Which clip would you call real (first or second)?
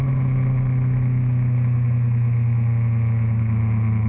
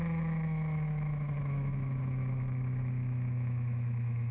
first